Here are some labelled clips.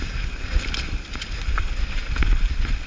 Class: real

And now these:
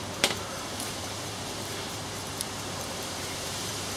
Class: fake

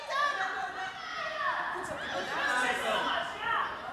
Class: real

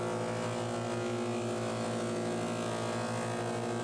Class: real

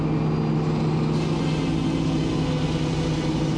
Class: real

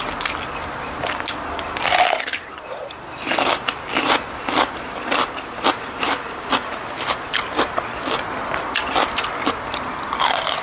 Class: fake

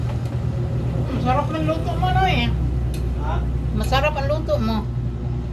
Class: real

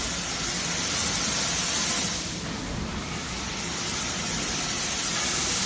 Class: real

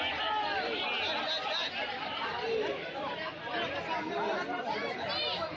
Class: real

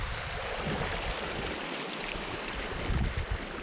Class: real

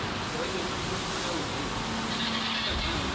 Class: real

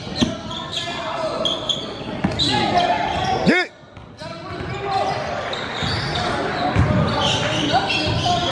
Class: real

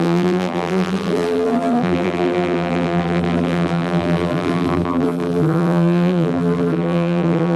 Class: fake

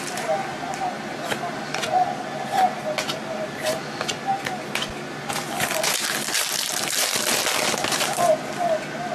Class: real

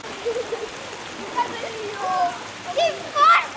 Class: fake